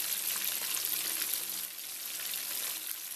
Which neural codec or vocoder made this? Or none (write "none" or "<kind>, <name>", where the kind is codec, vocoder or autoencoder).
none